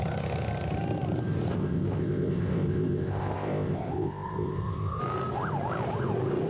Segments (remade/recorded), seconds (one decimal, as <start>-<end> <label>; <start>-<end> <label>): 0.0-1.5 recorded; 1.5-5.0 remade; 5.0-6.5 recorded